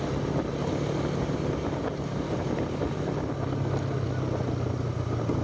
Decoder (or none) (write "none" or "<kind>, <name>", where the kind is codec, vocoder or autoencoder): none